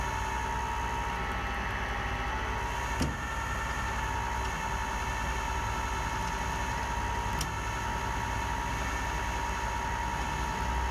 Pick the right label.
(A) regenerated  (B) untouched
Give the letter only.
B